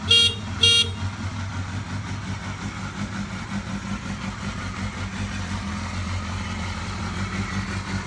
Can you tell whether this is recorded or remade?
recorded